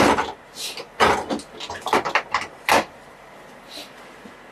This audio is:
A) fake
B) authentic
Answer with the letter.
B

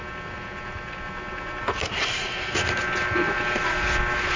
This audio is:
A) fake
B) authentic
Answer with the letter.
B